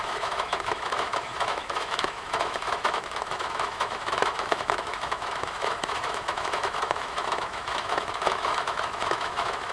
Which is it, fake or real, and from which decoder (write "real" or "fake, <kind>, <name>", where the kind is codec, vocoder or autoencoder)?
fake, autoencoder, DAC-VAE